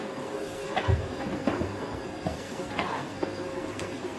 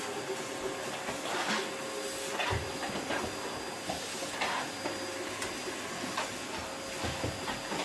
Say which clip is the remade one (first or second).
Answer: first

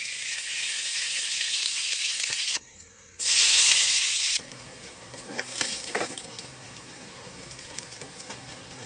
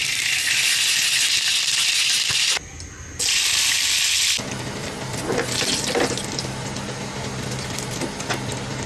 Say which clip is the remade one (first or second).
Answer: first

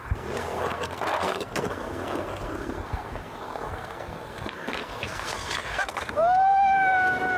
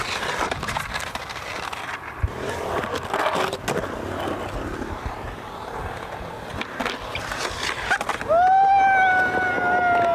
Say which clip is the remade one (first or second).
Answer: first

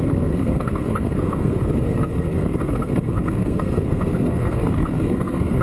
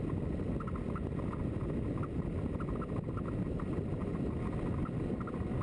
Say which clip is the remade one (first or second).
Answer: first